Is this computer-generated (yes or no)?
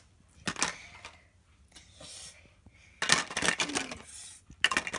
no